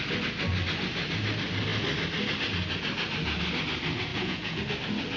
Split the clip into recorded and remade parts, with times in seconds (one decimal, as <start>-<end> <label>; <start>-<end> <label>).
0.0-4.1 recorded; 4.1-4.6 remade; 4.6-5.2 recorded